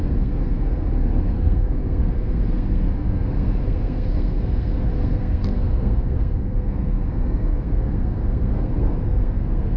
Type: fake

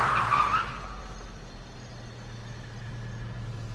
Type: real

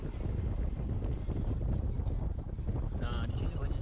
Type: real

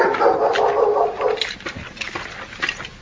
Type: real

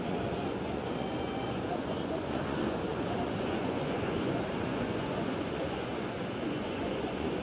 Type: fake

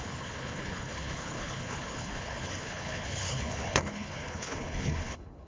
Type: fake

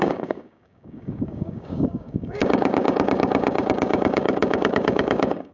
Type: fake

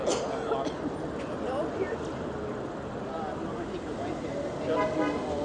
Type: real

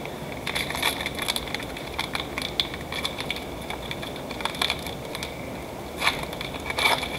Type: real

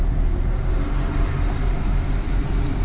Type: real